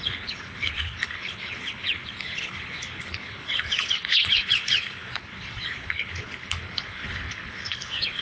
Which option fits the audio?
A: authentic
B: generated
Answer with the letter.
B